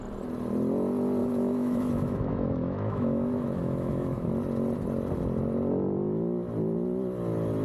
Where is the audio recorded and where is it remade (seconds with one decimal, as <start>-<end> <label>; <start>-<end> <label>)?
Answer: 0.0-1.2 recorded; 1.2-4.3 remade; 4.3-7.6 recorded